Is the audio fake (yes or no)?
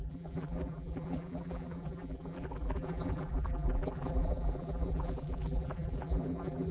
yes